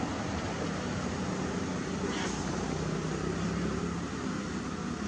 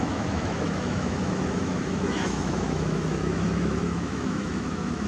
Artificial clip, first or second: second